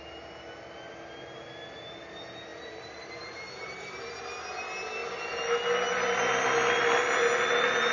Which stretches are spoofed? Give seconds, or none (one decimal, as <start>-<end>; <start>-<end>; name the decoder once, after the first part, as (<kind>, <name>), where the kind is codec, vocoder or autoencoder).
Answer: 2.5-4.1 (vocoder, BigVGAN v2)